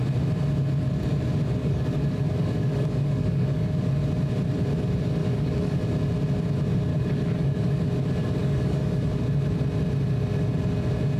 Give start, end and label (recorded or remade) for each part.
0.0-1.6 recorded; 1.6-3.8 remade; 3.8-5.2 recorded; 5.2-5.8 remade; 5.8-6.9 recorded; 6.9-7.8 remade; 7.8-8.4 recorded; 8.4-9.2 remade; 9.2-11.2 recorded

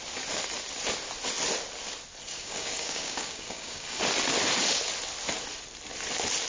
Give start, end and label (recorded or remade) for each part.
0.0-2.3 recorded; 2.3-4.0 remade; 4.0-6.5 recorded